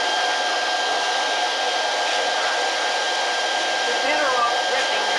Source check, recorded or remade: recorded